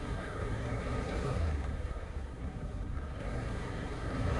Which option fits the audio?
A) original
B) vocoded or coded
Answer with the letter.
B